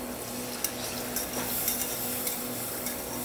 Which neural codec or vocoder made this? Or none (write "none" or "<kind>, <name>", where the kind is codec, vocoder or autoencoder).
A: none